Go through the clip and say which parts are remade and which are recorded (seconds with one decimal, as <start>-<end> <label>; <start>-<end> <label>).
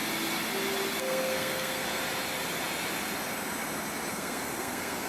0.0-1.0 recorded; 1.0-2.0 remade; 2.0-4.1 recorded; 4.1-5.1 remade